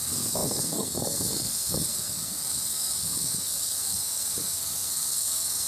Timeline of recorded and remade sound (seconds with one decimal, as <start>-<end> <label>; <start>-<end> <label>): 0.0-5.7 remade